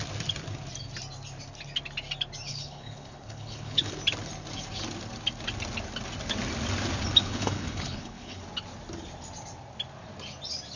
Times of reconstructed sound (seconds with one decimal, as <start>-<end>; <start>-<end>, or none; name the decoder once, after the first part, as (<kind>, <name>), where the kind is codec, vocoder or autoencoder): 2.5-3.9 (codec, HILCodec); 7.2-8.4